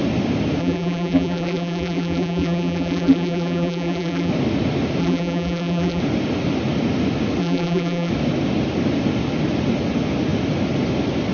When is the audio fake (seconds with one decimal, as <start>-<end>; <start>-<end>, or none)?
0.6-4.3; 5.0-6.0; 7.4-8.1